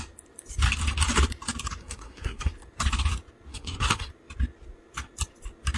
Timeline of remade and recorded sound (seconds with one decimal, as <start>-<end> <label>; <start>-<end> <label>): 0.0-1.8 recorded; 1.8-2.5 remade; 2.5-3.5 recorded; 3.5-4.1 remade; 4.1-5.8 recorded